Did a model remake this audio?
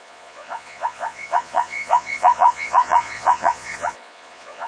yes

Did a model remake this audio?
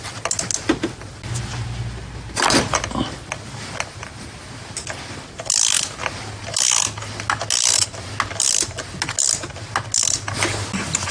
no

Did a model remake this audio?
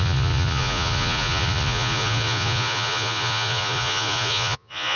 yes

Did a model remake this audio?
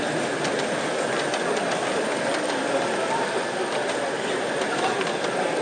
no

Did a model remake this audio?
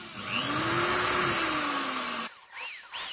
no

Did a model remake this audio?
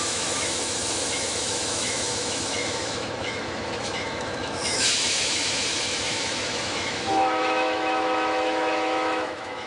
yes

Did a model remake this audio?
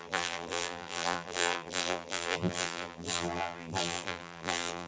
yes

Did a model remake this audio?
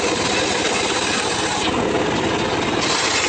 no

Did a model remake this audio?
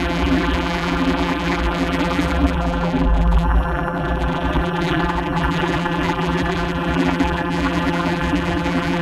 yes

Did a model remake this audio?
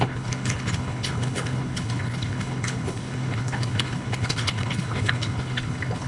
yes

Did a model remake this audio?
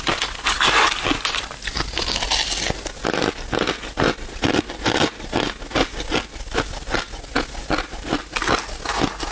no